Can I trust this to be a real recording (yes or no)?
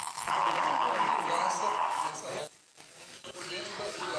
no